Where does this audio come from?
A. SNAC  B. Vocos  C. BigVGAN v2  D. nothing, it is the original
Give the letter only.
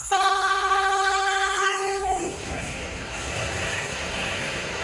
A